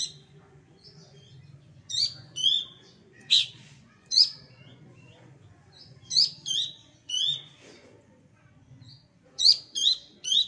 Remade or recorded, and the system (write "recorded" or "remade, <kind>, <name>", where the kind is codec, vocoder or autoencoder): remade, vocoder, Vocos